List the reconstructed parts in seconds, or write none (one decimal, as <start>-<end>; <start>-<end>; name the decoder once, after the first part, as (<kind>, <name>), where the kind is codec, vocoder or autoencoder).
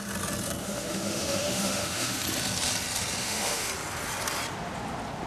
0.6-2.2 (autoencoder, DAC-VAE); 3.2-3.7